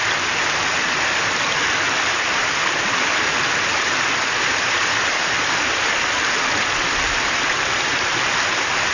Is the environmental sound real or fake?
real